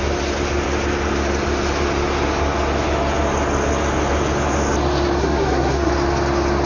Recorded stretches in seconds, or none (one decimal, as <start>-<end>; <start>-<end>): 0.0-5.2; 5.9-6.7